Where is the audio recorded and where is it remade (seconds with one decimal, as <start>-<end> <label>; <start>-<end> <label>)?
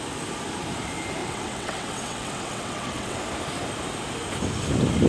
0.0-1.2 recorded; 1.2-3.2 remade; 3.2-5.1 recorded